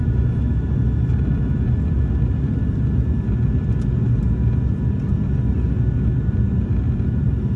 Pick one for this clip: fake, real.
real